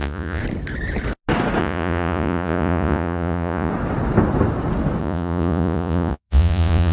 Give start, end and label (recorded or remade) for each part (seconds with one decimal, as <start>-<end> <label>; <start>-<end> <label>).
0.0-0.4 remade; 0.4-1.6 recorded; 1.6-3.7 remade; 3.7-5.0 recorded; 5.0-6.9 remade